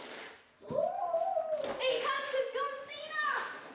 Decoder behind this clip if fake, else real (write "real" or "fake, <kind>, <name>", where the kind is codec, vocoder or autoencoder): real